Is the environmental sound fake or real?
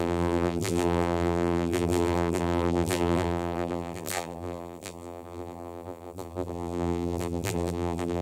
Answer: fake